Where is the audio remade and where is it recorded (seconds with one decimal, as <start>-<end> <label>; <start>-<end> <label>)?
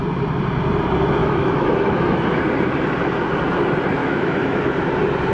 0.0-1.2 recorded; 1.2-2.4 remade; 2.4-4.0 recorded; 4.0-4.6 remade; 4.6-5.3 recorded